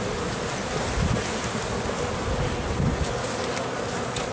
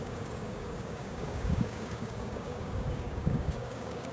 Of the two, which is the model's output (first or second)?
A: second